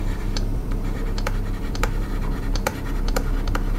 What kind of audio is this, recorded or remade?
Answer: remade